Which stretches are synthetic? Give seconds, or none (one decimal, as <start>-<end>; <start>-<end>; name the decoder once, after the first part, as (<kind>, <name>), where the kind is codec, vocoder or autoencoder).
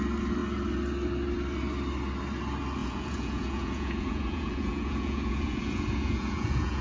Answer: 2.8-6.8 (vocoder, Vocos)